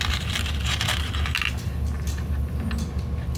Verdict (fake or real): real